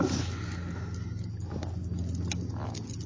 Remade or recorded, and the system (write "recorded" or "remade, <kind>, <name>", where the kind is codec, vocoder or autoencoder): recorded